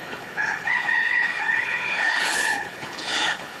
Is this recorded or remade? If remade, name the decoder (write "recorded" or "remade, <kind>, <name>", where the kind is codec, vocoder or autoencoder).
remade, codec, HILCodec